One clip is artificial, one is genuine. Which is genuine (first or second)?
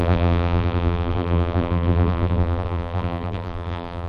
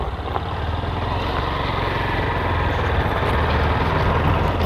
second